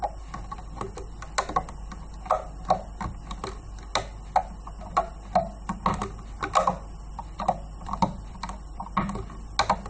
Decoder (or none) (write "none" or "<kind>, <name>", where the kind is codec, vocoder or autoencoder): none